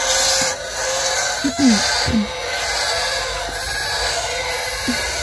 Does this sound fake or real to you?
real